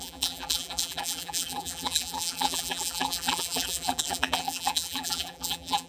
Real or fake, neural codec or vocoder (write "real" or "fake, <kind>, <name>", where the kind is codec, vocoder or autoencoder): fake, vocoder, BigVGAN v2